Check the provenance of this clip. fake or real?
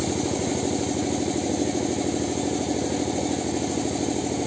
real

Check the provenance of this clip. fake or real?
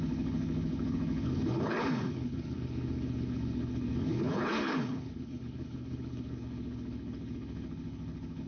fake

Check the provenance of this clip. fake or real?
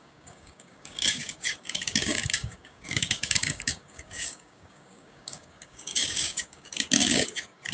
fake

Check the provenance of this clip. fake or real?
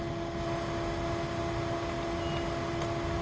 real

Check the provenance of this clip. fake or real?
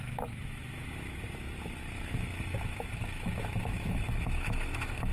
fake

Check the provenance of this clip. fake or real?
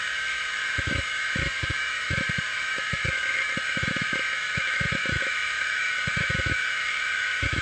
fake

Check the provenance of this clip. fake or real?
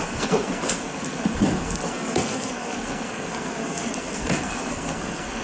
fake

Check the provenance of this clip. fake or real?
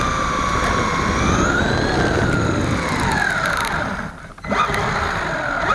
real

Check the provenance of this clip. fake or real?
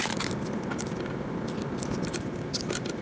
real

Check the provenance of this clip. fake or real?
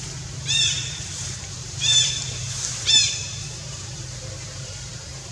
fake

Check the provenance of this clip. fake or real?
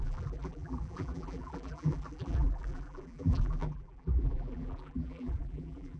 fake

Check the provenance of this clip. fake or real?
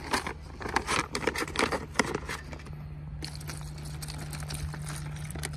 real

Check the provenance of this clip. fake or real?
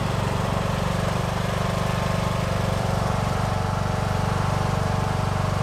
fake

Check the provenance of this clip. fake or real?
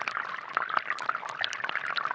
real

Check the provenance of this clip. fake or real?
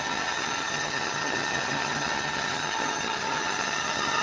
fake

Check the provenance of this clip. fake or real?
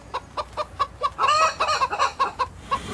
real